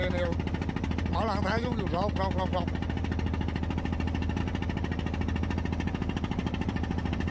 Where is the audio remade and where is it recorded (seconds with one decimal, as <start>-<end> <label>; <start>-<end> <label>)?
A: 0.0-6.4 recorded; 6.4-7.3 remade